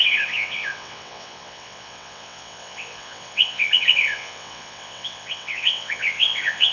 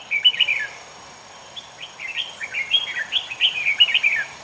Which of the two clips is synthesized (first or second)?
first